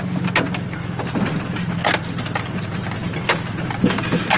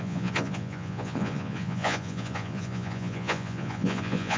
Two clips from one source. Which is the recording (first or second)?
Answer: first